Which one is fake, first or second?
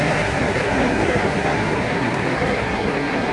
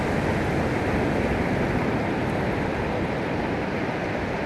first